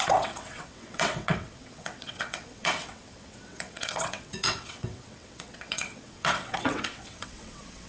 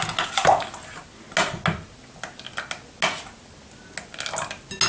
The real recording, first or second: second